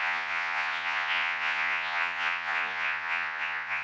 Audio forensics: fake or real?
fake